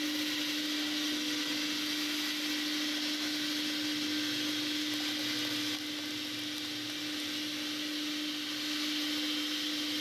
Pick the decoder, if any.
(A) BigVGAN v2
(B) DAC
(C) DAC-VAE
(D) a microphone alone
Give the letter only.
D